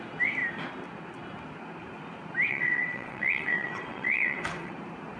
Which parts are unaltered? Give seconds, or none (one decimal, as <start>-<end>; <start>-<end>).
0.0-2.5; 4.7-5.2